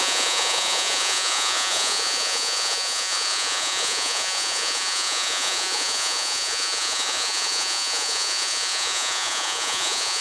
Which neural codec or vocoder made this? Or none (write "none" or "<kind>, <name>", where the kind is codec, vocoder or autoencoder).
vocoder, Vocos